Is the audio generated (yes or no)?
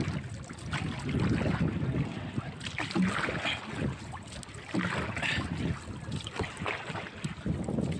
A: no